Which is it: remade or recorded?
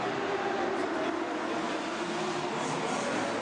recorded